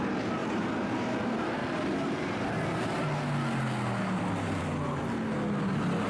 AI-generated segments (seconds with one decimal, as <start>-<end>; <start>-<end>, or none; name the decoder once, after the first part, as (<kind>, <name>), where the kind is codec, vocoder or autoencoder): none